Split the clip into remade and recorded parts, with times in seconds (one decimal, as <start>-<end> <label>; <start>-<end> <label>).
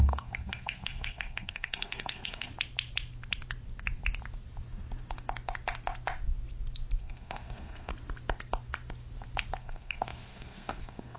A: 0.0-2.5 remade; 2.5-7.0 recorded; 7.0-7.9 remade; 7.9-9.6 recorded; 9.6-11.2 remade